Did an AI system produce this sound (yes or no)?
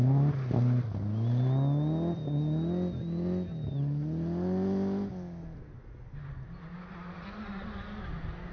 no